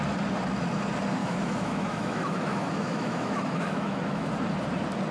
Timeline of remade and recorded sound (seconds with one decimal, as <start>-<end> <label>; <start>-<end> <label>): 0.0-1.2 recorded; 1.2-4.3 remade; 4.3-5.1 recorded